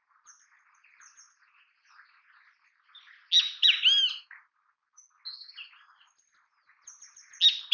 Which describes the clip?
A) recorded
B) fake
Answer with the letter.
A